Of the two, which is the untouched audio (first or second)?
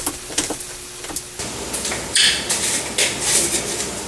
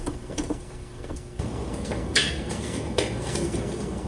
first